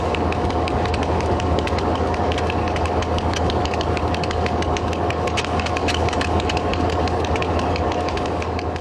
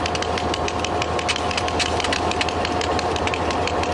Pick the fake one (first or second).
first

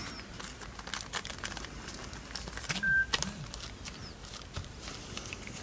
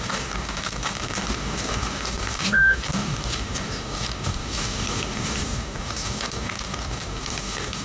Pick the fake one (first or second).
second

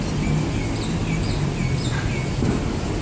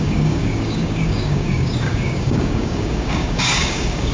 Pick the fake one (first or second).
second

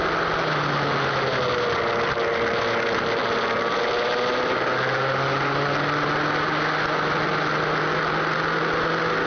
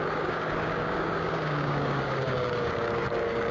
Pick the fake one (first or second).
second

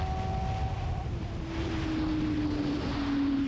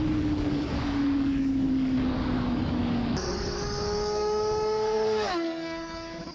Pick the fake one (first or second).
second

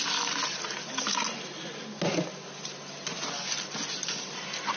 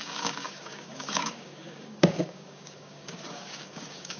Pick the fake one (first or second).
second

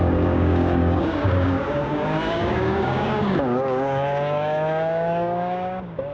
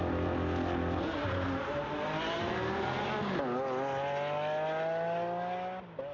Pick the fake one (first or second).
first